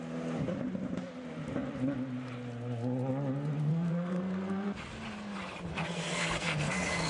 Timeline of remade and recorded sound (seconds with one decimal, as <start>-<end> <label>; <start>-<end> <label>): 0.0-3.7 recorded; 3.7-4.8 remade; 4.8-5.7 recorded; 5.7-7.1 remade